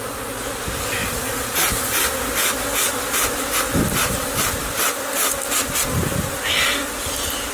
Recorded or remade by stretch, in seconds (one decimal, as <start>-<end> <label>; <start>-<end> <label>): 0.0-1.0 recorded; 1.0-1.8 remade; 1.8-2.4 recorded; 2.4-3.6 remade; 3.6-7.5 recorded